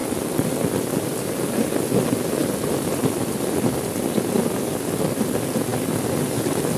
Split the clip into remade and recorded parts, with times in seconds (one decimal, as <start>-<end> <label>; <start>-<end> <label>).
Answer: 0.0-6.8 recorded